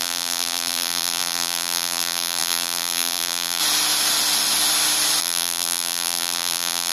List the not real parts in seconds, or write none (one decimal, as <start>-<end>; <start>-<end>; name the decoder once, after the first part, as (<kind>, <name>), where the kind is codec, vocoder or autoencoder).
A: 0.0-3.6 (vocoder, BigVGAN v2); 5.2-6.9